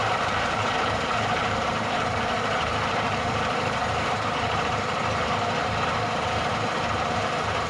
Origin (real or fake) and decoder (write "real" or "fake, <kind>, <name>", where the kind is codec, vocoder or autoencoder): fake, vocoder, BigVGAN v2